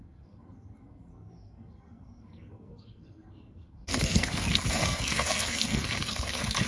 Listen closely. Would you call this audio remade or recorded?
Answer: remade